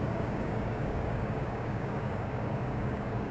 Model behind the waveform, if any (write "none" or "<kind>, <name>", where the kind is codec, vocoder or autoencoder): codec, DAC